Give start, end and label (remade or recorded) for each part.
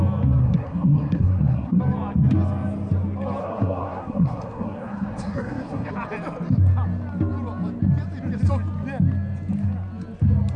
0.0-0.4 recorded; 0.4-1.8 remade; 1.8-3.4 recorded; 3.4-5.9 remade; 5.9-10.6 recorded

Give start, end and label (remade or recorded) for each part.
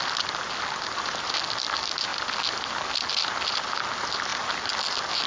0.0-5.3 recorded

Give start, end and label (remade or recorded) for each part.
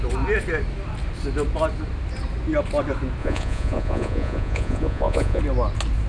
0.0-3.2 recorded; 3.2-5.4 remade; 5.4-6.1 recorded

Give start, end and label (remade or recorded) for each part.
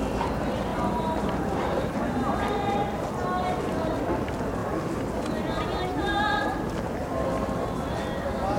0.0-0.7 recorded; 0.7-1.9 remade; 1.9-8.6 recorded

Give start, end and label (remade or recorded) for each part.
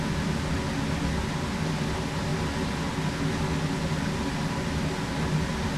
0.0-5.8 recorded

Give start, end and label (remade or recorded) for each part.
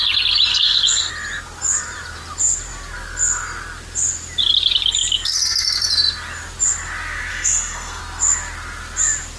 0.0-0.5 recorded; 0.5-1.1 remade; 1.1-7.3 recorded; 7.3-8.0 remade; 8.0-9.4 recorded